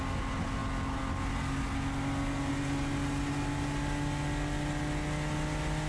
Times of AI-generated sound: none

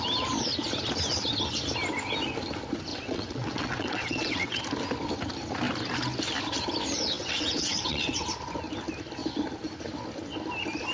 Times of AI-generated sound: 2.9-4.6 (vocoder, WaveNeXt); 7.2-8.3

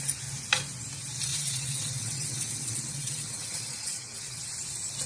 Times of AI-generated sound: 1.3-4.4 (vocoder, WaveNeXt)